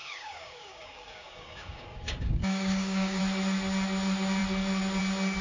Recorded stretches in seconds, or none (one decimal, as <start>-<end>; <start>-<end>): 3.2-5.4